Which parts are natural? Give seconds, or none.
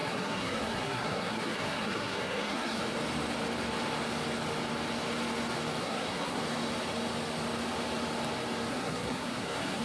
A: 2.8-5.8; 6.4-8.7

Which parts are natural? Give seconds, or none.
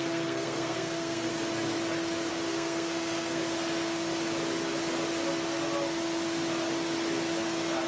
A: 1.3-2.3; 3.4-7.9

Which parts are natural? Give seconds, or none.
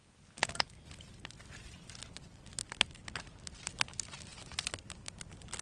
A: 0.0-5.6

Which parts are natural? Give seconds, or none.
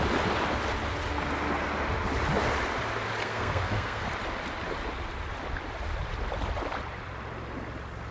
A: 0.0-3.2; 4.1-8.1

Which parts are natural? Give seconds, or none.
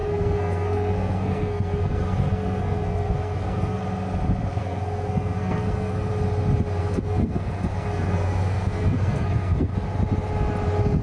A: 3.8-4.6; 6.1-6.8; 9.7-11.0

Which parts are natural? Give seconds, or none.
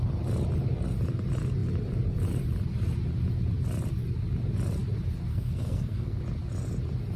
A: 0.0-5.3; 6.2-7.2